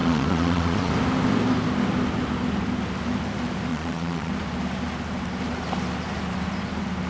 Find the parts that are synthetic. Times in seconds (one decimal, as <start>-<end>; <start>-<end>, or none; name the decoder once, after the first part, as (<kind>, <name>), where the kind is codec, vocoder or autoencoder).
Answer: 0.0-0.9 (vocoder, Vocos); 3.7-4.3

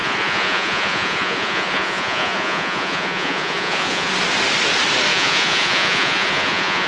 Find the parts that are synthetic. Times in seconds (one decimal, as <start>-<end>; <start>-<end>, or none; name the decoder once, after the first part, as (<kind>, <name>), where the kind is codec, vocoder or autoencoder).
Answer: 0.0-4.1 (vocoder, Vocos); 5.1-6.9

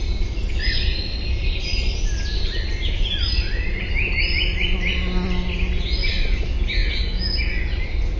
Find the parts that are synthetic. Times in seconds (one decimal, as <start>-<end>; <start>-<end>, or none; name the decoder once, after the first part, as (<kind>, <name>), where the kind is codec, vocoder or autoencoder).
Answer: none

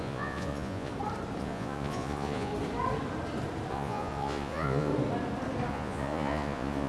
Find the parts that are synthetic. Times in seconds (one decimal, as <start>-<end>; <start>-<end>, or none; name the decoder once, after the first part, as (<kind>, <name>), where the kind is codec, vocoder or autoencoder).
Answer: 0.0-0.9 (vocoder, Vocos); 1.4-2.5; 3.7-4.9; 5.7-6.9

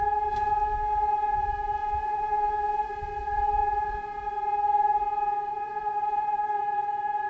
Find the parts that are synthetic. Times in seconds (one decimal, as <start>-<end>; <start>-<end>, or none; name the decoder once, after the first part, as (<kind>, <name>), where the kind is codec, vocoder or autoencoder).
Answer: 1.8-2.9 (vocoder, Vocos); 5.5-6.6

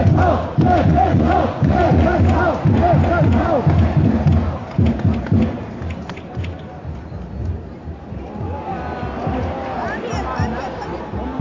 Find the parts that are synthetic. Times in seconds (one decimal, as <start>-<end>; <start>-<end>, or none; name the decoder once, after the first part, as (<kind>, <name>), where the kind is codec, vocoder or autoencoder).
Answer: 0.9-2.2 (vocoder, Vocos)

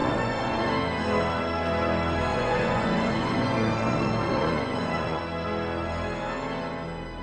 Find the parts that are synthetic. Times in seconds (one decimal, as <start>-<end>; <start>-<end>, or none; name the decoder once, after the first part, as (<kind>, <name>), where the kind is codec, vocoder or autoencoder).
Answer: 0.0-0.7 (vocoder, Vocos); 2.3-5.2